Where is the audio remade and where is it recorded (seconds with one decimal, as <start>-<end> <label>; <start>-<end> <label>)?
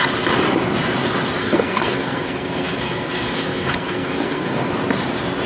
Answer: 0.0-1.4 recorded; 1.4-4.7 remade; 4.7-5.5 recorded